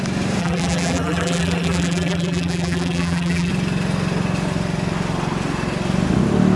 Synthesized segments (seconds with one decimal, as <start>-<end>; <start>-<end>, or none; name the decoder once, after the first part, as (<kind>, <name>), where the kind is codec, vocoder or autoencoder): 0.4-3.5 (vocoder, BigVGAN v2)